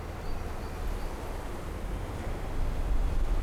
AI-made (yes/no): no